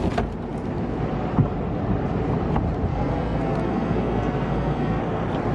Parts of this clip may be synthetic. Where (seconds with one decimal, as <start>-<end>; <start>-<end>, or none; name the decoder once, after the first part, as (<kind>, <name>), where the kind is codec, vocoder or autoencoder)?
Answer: 2.9-5.0 (codec, SNAC)